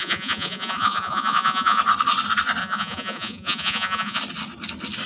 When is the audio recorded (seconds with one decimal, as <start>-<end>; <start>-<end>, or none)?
1.8-2.6; 4.2-5.1